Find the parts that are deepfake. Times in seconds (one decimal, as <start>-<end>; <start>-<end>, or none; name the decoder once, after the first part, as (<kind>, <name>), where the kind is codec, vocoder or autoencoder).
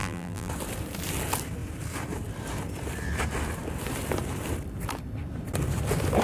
0.0-0.5 (vocoder, BigVGAN v2)